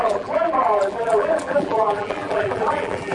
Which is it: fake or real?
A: fake